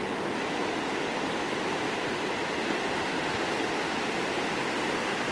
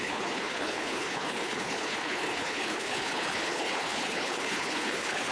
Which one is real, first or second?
first